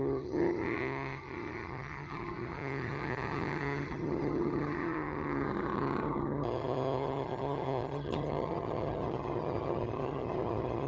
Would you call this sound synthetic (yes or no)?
yes